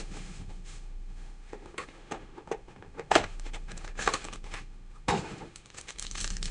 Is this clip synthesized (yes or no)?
yes